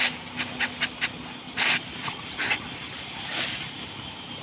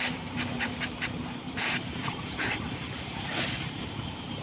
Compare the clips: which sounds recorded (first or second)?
first